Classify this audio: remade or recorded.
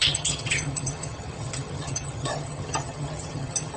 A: remade